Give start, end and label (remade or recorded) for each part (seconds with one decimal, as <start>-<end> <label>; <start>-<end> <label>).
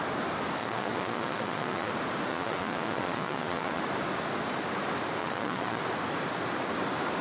0.0-0.6 recorded; 0.6-1.9 remade; 1.9-2.3 recorded; 2.3-3.8 remade; 3.8-5.2 recorded; 5.2-5.8 remade; 5.8-7.2 recorded